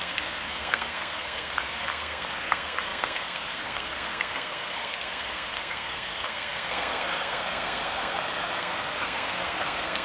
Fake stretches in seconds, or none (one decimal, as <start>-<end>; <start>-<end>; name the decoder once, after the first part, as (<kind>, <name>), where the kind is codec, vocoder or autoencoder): 0.0-10.0 (codec, SNAC)